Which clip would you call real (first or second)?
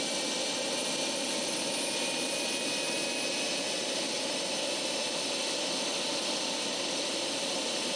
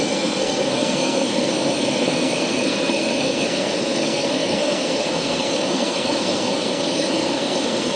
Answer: first